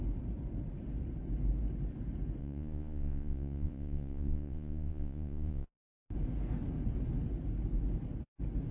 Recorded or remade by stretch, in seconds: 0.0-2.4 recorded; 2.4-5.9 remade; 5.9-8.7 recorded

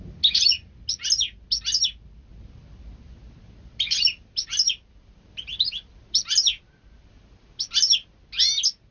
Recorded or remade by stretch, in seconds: 0.0-8.9 recorded

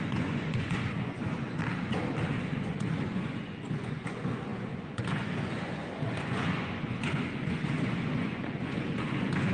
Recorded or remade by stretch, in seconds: 0.0-1.6 remade; 1.6-2.3 recorded; 2.3-9.5 remade

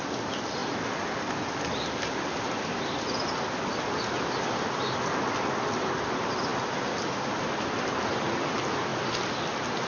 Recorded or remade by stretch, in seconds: 0.0-9.9 recorded